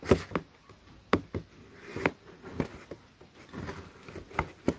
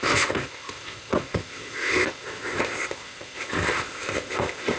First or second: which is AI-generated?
second